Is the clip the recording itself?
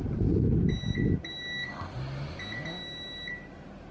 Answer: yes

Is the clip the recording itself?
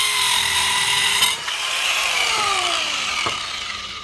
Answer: no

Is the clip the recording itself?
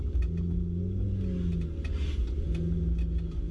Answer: yes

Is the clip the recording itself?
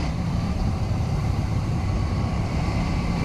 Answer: no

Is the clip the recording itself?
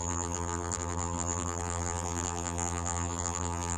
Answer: no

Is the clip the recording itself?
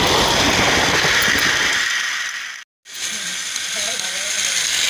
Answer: yes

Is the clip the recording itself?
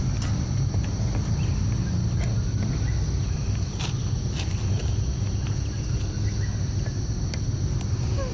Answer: yes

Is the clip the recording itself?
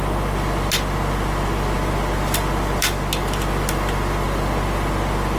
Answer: yes